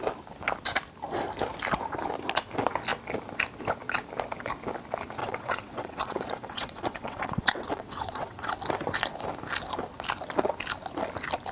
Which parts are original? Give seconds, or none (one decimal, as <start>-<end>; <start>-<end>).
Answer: 0.0-5.2; 8.6-11.5